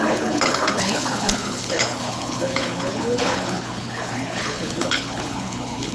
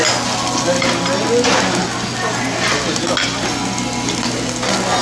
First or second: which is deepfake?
first